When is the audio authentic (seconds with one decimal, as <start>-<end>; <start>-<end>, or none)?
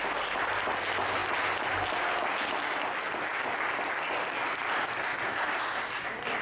0.0-6.4